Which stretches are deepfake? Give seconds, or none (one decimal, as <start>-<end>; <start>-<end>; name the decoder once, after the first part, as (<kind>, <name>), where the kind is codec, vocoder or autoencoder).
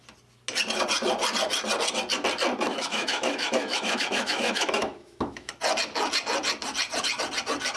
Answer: 2.7-5.5 (autoencoder, DAC-VAE)